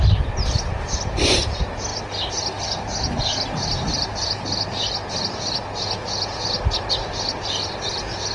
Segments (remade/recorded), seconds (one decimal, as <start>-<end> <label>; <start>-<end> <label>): 0.0-8.3 recorded